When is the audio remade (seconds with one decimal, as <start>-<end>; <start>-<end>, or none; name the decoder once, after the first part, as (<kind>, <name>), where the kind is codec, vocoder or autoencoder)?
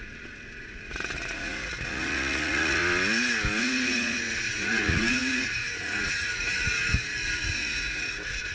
0.0-2.8 (vocoder, Vocos); 3.6-8.5